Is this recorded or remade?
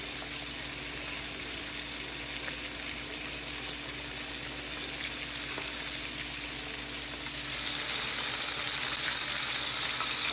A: recorded